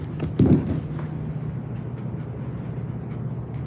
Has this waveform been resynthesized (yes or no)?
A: no